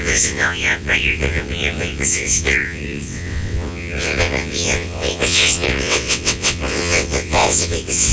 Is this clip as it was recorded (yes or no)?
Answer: no